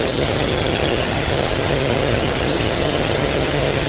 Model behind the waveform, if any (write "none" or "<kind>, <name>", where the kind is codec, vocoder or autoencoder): vocoder, HiFi-GAN